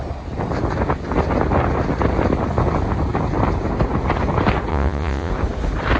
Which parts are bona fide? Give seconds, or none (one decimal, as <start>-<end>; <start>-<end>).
0.0-4.7; 5.3-6.0